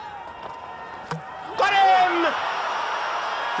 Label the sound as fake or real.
real